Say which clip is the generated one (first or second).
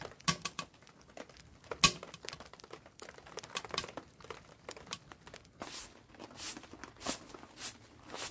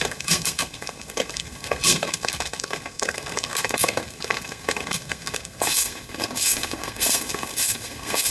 second